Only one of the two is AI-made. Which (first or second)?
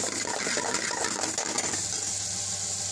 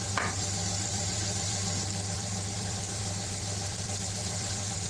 second